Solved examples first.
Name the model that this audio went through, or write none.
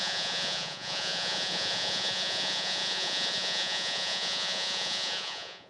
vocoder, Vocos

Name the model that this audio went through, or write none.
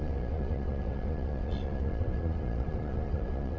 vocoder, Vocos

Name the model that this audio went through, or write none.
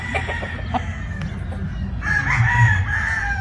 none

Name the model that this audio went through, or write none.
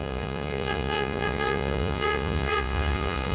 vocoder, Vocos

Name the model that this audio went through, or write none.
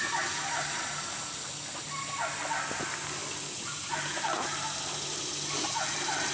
none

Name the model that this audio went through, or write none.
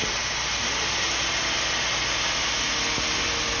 none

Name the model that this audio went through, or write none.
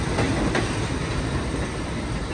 none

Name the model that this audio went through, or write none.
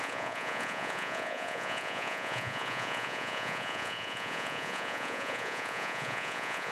vocoder, Vocos